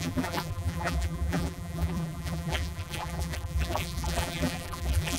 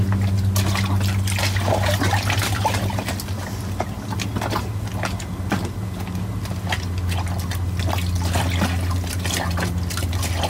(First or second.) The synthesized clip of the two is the first